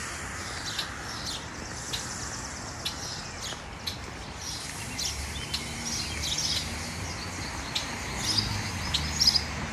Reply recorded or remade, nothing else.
recorded